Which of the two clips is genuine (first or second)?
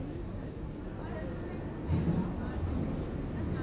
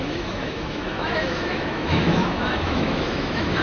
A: first